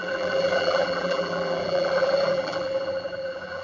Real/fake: fake